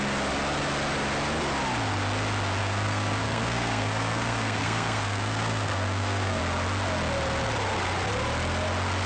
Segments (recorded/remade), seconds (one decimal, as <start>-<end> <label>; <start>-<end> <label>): 0.0-2.6 recorded; 2.6-6.4 remade; 6.4-9.1 recorded